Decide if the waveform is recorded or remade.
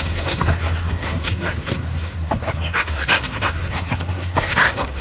remade